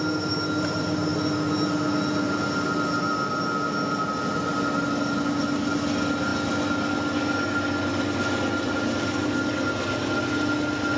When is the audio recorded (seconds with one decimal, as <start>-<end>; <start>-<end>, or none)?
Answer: 0.0-11.0